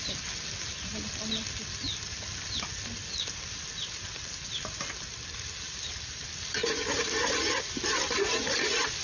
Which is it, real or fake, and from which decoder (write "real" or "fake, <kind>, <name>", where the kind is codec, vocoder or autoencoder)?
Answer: real